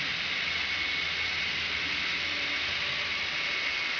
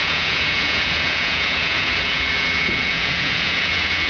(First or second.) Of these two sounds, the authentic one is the first